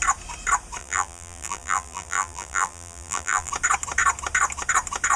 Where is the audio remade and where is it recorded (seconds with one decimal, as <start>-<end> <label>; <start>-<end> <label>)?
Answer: 0.0-0.8 recorded; 0.8-3.5 remade; 3.5-5.2 recorded